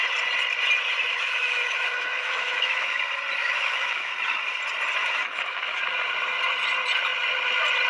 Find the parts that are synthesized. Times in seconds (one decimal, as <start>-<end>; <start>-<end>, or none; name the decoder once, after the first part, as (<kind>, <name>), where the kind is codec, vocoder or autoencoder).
1.1-3.0 (autoencoder, DAC-VAE); 3.4-4.1; 5.0-5.8